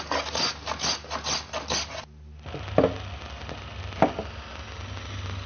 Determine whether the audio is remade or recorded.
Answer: recorded